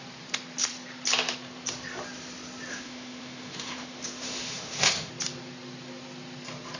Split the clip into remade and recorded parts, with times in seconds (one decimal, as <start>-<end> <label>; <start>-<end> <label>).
0.0-2.7 recorded; 2.7-5.1 remade; 5.1-6.8 recorded